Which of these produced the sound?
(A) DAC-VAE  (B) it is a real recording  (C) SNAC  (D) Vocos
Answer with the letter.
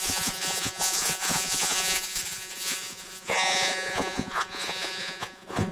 D